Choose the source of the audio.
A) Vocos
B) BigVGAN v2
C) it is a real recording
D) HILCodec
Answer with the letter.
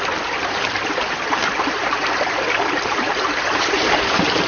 C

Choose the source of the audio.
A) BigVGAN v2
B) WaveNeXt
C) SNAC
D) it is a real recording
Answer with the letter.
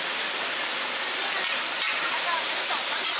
D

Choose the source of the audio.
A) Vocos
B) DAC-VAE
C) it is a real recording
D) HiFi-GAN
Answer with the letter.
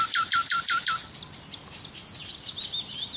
C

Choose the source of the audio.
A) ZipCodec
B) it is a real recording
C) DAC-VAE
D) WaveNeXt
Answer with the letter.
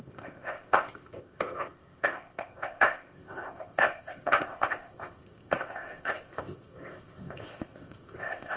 A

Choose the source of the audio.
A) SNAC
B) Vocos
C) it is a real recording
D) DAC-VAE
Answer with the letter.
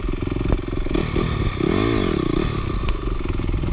C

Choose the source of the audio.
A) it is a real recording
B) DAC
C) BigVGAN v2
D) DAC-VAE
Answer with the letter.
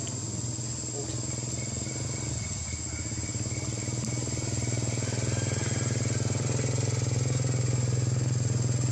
A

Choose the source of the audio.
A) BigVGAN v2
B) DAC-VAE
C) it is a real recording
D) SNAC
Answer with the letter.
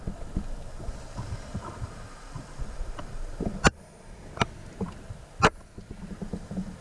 C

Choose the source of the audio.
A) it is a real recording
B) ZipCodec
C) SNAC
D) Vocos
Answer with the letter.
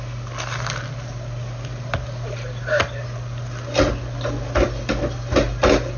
A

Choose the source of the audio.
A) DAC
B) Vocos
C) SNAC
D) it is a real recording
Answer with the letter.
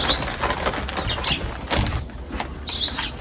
D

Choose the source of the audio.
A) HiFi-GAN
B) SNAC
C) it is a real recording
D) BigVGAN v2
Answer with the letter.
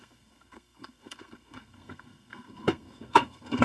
B